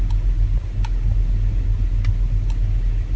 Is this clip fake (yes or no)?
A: no